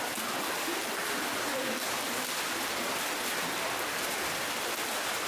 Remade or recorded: remade